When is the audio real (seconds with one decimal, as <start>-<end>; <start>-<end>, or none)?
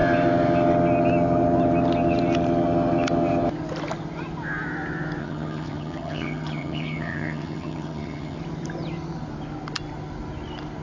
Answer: 0.0-5.2; 8.4-10.8